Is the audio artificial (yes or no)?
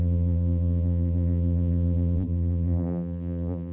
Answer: yes